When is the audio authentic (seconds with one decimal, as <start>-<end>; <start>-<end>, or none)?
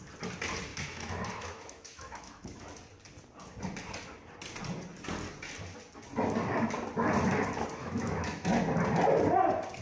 0.0-0.7; 2.6-7.8; 8.5-9.8